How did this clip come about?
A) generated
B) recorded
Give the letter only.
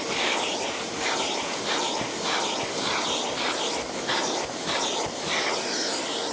B